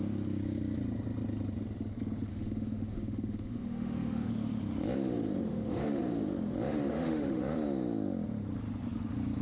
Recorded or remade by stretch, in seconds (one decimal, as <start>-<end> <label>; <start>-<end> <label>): 0.0-2.3 recorded; 2.3-4.3 remade; 4.3-5.5 recorded; 5.5-6.0 remade; 6.0-6.9 recorded; 6.9-7.4 remade; 7.4-9.4 recorded